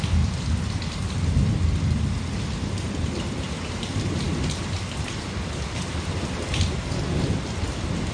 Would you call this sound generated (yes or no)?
no